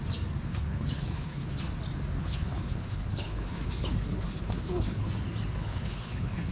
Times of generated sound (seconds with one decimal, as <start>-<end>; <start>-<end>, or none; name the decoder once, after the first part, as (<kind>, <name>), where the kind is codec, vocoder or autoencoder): 0.5-1.7 (codec, HILCodec); 2.2-5.1; 5.6-6.5

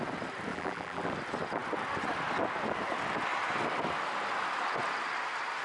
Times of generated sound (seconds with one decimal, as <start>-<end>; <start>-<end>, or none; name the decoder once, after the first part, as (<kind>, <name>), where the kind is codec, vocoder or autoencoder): 0.5-1.1 (vocoder, BigVGAN v2)